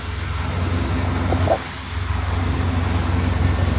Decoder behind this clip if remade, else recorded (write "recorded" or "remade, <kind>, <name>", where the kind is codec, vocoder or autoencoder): recorded